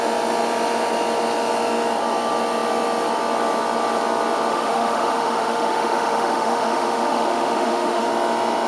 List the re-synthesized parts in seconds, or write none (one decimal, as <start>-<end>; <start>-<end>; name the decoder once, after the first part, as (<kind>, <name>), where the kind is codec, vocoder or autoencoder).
4.5-8.1 (autoencoder, DAC-VAE)